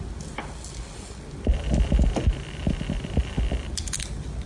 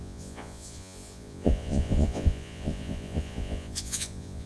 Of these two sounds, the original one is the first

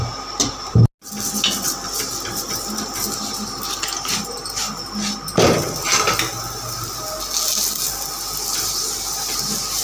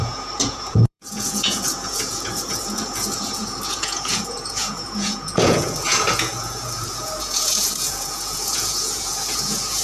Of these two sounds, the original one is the first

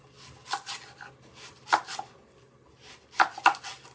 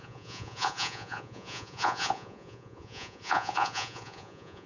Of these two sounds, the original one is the first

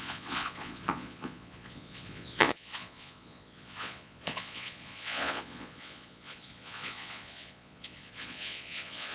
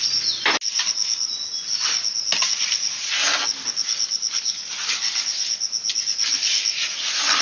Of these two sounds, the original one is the second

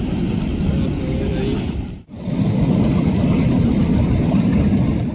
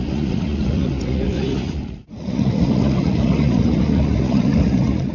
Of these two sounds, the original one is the first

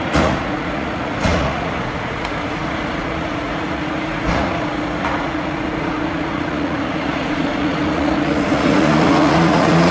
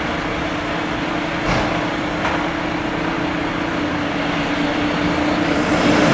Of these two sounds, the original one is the second